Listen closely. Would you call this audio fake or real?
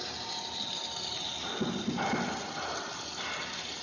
real